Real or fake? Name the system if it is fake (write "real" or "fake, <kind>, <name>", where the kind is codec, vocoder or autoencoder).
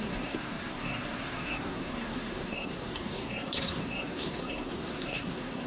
fake, codec, SNAC